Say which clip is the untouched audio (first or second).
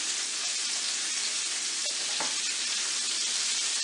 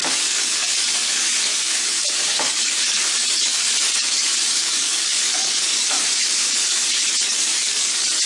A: first